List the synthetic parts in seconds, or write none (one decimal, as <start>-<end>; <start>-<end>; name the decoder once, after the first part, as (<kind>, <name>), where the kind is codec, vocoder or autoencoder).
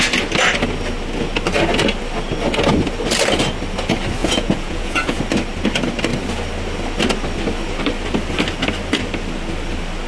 4.2-5.2 (vocoder, Vocos)